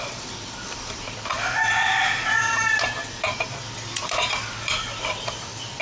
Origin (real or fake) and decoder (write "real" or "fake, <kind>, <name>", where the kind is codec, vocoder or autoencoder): fake, vocoder, BigVGAN v2